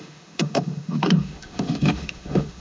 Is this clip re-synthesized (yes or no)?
yes